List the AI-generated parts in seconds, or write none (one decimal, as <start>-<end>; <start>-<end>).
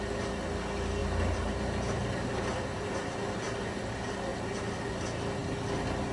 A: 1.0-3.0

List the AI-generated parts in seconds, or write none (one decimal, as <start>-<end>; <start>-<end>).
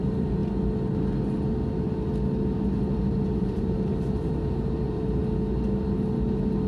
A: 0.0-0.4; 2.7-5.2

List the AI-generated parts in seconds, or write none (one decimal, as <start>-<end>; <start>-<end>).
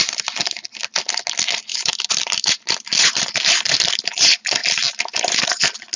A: 1.7-3.6; 4.6-5.6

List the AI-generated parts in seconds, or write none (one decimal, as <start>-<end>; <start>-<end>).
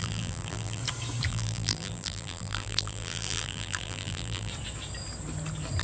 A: 0.0-0.8; 1.3-4.5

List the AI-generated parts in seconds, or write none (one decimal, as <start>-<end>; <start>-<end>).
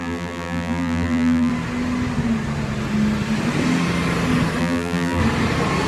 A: 0.0-1.5; 4.6-5.2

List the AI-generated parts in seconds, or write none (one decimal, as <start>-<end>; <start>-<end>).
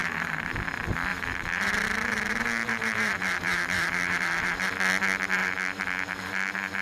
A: 0.0-0.7; 1.1-4.7; 5.4-6.8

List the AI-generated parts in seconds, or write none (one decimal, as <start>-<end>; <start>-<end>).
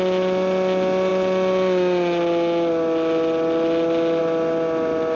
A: none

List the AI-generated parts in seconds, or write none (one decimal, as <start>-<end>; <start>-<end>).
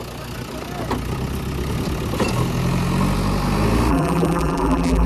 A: 3.9-5.1